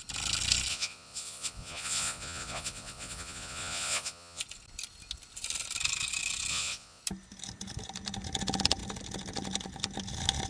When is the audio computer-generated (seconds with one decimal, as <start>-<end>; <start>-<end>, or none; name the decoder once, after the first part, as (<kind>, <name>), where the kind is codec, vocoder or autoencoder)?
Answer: 0.7-4.4 (vocoder, Vocos); 6.5-7.0